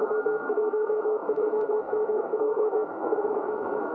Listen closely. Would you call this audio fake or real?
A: fake